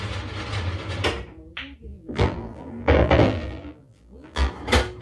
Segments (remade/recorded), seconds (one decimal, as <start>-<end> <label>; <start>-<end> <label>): 0.0-1.9 recorded; 1.9-4.5 remade; 4.5-5.0 recorded